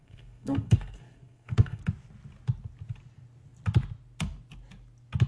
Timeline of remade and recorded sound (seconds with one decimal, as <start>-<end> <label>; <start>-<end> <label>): 0.0-1.8 remade; 1.8-5.3 recorded